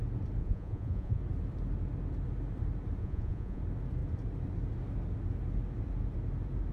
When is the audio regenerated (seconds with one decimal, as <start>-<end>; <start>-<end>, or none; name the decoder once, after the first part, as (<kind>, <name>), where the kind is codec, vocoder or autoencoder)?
0.4-1.2 (vocoder, Vocos); 3.0-3.6

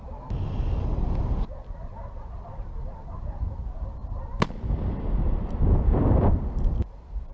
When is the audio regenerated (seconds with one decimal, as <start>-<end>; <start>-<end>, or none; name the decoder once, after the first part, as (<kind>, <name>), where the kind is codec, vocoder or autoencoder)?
none

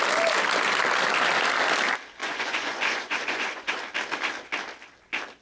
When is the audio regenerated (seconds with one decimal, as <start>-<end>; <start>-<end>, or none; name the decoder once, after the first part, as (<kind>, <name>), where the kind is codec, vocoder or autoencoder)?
2.2-3.7 (vocoder, Vocos)